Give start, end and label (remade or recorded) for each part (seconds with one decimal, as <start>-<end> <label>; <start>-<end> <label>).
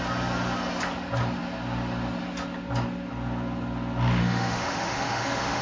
0.0-4.2 recorded; 4.2-5.6 remade